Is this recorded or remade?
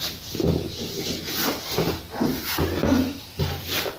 recorded